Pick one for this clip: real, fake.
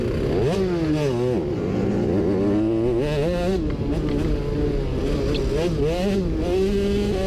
real